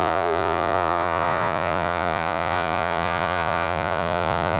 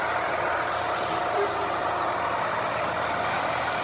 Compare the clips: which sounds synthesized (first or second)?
first